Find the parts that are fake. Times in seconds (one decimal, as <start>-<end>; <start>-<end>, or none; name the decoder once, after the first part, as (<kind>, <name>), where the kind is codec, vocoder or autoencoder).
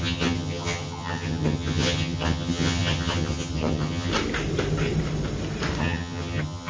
0.0-4.1 (vocoder, HiFi-GAN); 5.8-6.7